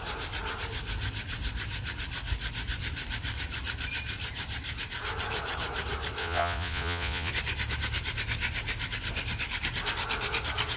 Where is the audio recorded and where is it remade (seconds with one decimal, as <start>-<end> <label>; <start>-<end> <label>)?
0.0-6.2 recorded; 6.2-7.3 remade; 7.3-10.8 recorded

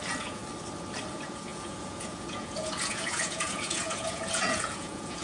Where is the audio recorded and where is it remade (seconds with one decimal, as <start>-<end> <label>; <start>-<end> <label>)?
0.0-0.4 remade; 0.4-1.1 recorded; 1.1-5.2 remade

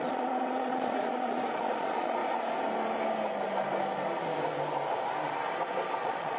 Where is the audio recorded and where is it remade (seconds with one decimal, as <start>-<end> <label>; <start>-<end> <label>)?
0.0-2.2 remade; 2.2-6.0 recorded; 6.0-6.4 remade

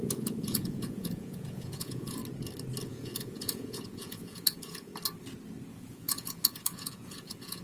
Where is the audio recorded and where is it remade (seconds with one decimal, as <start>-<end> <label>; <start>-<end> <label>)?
0.0-2.2 remade; 2.2-2.8 recorded; 2.8-4.9 remade; 4.9-5.7 recorded; 5.7-7.6 remade